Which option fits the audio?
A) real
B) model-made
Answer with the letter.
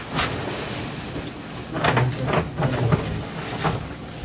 A